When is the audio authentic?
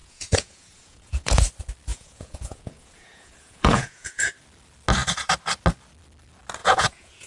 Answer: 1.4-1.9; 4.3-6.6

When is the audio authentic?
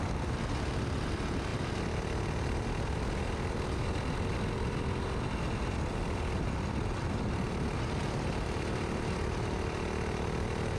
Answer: 0.0-10.8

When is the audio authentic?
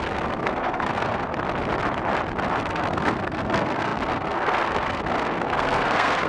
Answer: 1.3-2.6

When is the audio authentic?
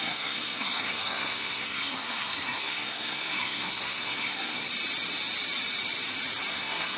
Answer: 4.7-6.5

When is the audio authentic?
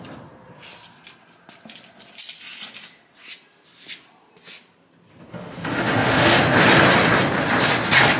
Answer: 0.0-5.3; 6.4-8.2